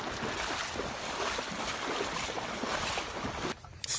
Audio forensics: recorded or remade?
recorded